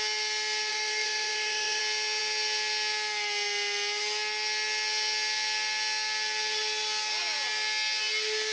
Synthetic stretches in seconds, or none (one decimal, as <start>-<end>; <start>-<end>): 0.7-1.8